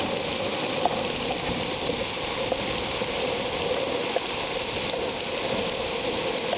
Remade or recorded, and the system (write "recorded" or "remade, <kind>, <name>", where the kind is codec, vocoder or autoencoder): recorded